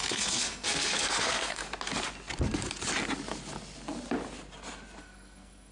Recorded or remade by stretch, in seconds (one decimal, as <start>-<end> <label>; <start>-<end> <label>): 0.0-1.6 remade; 1.6-5.0 recorded; 5.0-5.7 remade